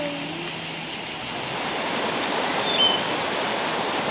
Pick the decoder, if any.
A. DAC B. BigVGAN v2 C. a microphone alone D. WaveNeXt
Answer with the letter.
C